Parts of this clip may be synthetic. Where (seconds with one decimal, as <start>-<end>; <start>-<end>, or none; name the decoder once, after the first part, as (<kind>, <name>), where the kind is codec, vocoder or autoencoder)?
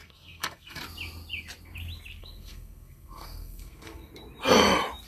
0.0-0.8 (codec, SNAC); 2.2-4.1